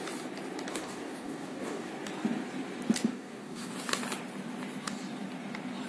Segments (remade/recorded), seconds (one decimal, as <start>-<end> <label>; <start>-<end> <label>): 0.0-0.7 recorded; 0.7-1.9 remade; 1.9-3.1 recorded; 3.1-3.7 remade; 3.7-5.9 recorded